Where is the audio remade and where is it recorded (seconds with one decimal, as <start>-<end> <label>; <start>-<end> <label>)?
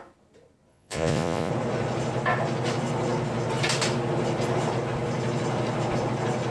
0.0-0.7 recorded; 0.7-1.5 remade; 1.5-6.5 recorded